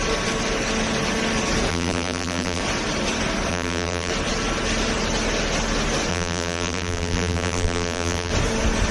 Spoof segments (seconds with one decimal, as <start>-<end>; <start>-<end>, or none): 1.7-2.6; 3.5-4.1; 6.1-8.3